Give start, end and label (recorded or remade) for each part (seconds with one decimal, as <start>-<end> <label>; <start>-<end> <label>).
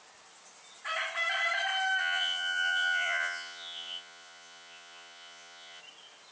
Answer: 0.0-2.0 recorded; 2.0-5.8 remade; 5.8-6.3 recorded